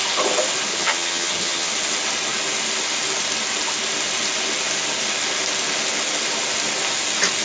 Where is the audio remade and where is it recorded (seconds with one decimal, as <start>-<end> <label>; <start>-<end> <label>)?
0.0-0.7 recorded; 0.7-1.7 remade; 1.7-7.4 recorded

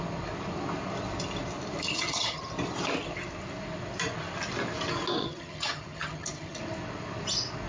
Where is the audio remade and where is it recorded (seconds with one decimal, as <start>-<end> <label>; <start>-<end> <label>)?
0.0-1.9 recorded; 1.9-2.5 remade; 2.5-5.2 recorded; 5.2-6.6 remade; 6.6-7.7 recorded

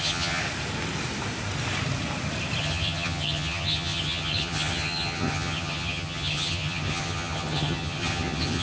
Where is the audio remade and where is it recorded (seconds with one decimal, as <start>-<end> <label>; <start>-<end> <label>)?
0.0-0.4 remade; 0.4-2.6 recorded; 2.6-8.6 remade

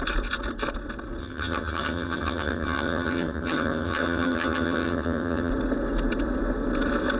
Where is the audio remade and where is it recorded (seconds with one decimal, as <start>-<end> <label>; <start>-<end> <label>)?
0.0-1.2 recorded; 1.2-5.5 remade; 5.5-7.2 recorded

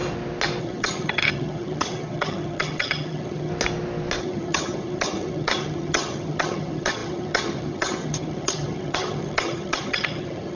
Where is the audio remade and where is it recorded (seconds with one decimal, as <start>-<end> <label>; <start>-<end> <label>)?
0.0-0.6 recorded; 0.6-3.5 remade; 3.5-4.2 recorded; 4.2-10.6 remade

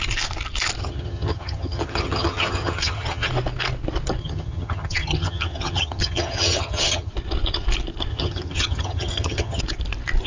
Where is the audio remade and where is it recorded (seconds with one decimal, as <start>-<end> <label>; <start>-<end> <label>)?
0.0-0.8 recorded; 0.8-3.3 remade; 3.3-4.2 recorded; 4.2-7.1 remade; 7.1-8.1 recorded; 8.1-9.6 remade; 9.6-10.3 recorded

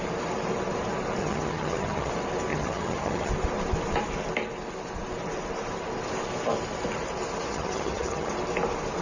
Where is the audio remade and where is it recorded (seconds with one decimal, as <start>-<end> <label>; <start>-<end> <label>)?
0.0-1.2 recorded; 1.2-2.1 remade; 2.1-2.5 recorded; 2.5-3.3 remade; 3.3-7.5 recorded; 7.5-8.3 remade; 8.3-9.0 recorded